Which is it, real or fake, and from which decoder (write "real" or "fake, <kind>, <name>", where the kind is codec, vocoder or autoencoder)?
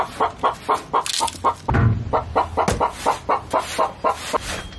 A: real